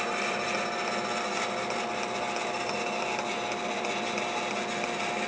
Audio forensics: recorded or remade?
recorded